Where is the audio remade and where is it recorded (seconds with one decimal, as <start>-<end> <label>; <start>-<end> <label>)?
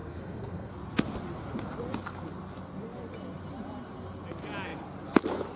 0.0-0.7 remade; 0.7-5.6 recorded